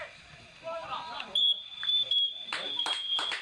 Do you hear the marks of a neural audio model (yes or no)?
yes